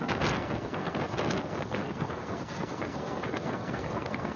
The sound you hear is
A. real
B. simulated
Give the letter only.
B